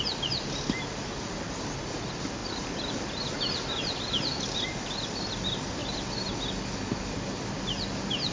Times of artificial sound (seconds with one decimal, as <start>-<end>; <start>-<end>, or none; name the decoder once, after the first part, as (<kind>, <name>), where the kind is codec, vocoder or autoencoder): none

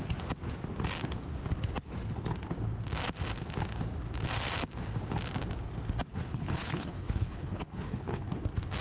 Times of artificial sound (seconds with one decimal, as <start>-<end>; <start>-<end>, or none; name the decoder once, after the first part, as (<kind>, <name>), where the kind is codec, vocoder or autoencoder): 6.1-8.3 (codec, HILCodec)